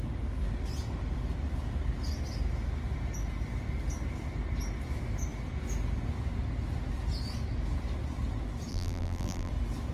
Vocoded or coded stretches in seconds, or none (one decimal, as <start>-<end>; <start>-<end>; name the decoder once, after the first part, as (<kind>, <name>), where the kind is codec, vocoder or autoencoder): 8.7-9.5 (vocoder, BigVGAN v2)